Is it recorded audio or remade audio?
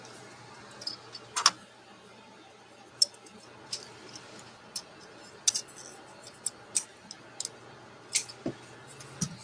recorded